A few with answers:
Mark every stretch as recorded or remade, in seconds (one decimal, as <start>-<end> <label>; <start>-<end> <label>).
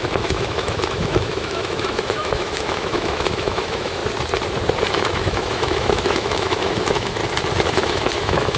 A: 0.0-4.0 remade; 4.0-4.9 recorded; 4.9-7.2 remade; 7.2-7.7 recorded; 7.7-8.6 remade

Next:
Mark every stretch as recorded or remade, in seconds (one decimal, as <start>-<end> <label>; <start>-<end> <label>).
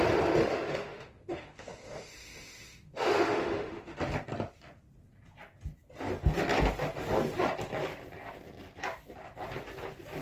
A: 0.0-0.4 recorded; 0.4-4.0 remade; 4.0-10.2 recorded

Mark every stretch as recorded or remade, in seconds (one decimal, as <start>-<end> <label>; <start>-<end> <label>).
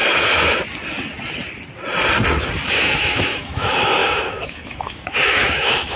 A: 0.0-2.7 recorded; 2.7-6.0 remade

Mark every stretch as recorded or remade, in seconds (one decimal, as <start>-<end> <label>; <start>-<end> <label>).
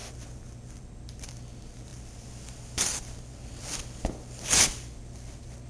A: 0.0-5.7 recorded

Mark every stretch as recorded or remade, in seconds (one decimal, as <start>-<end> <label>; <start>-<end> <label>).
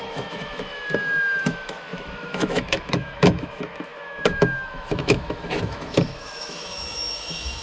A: 0.0-7.6 remade